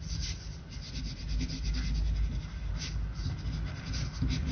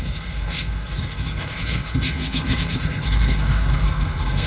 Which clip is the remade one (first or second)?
second